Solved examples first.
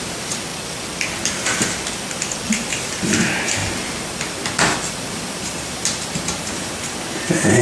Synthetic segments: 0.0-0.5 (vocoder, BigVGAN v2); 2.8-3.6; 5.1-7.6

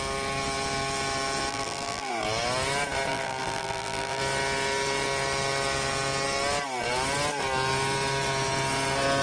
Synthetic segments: 1.5-2.1 (vocoder, BigVGAN v2); 3.1-4.2

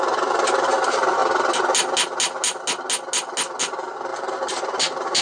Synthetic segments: 0.0-1.2 (vocoder, BigVGAN v2); 3.6-5.2

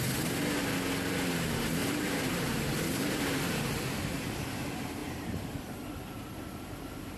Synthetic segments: 1.8-3.8 (vocoder, BigVGAN v2); 5.0-6.0

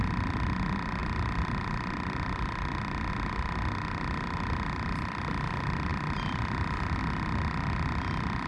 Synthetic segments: 1.0-3.1 (vocoder, BigVGAN v2)